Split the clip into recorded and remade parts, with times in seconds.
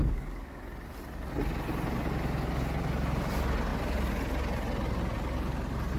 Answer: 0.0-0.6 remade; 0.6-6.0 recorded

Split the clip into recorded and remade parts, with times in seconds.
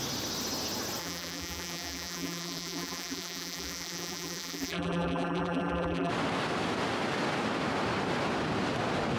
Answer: 0.0-1.0 recorded; 1.0-6.1 remade; 6.1-9.2 recorded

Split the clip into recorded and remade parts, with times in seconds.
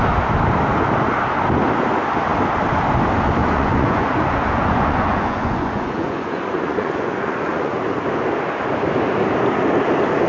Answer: 0.0-3.4 recorded; 3.4-7.8 remade; 7.8-10.3 recorded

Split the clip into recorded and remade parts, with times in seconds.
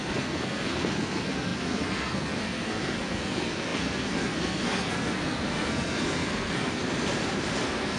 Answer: 0.0-6.8 remade; 6.8-7.6 recorded; 7.6-8.0 remade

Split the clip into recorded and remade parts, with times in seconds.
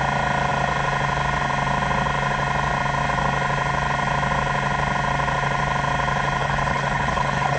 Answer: 0.0-6.4 recorded; 6.4-7.6 remade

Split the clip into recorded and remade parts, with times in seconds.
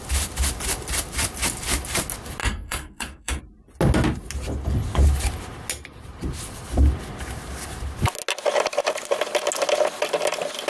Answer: 0.0-2.4 recorded; 2.4-3.4 remade; 3.4-10.7 recorded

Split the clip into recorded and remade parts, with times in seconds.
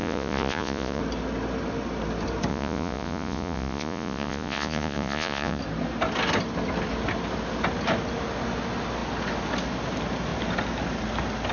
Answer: 0.0-1.0 remade; 1.0-2.5 recorded; 2.5-5.6 remade; 5.6-11.5 recorded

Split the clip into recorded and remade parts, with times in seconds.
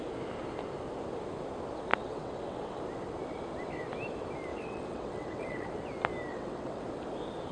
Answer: 0.0-1.9 recorded; 1.9-2.8 remade; 2.8-4.5 recorded; 4.5-5.7 remade; 5.7-6.3 recorded; 6.3-6.8 remade; 6.8-7.5 recorded